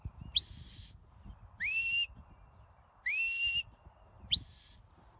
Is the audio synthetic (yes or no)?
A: no